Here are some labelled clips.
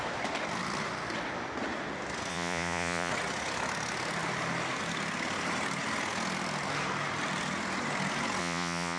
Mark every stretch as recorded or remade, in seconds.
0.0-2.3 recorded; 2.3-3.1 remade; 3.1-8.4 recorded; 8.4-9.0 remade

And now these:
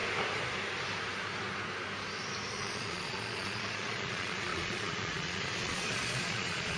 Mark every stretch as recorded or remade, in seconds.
0.0-2.5 recorded; 2.5-6.8 remade

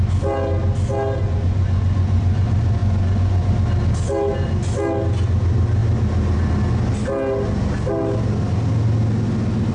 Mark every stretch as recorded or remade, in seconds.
0.0-1.2 recorded; 1.2-2.4 remade; 2.4-2.8 recorded; 2.8-3.5 remade; 3.5-9.7 recorded